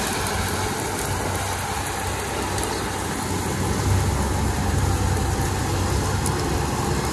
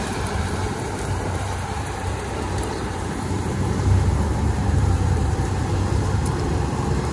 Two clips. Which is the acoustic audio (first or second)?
first